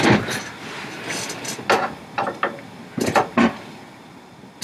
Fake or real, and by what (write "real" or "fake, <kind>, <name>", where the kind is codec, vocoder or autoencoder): real